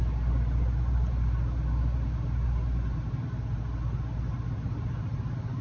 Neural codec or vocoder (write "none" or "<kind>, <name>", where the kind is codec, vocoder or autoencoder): none